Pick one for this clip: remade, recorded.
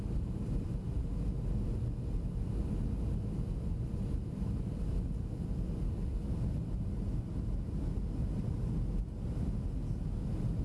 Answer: recorded